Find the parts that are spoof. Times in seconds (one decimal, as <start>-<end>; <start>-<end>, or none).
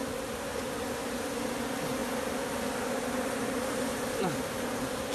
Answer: 0.0-0.7; 2.0-5.1